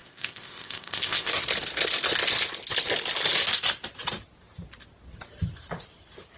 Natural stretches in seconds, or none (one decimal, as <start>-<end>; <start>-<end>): 1.3-6.4